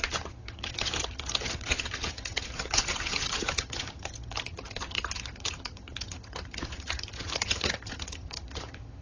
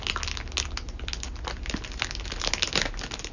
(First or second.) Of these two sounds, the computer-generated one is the first